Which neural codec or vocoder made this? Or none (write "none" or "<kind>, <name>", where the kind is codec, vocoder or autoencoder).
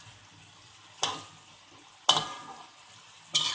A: none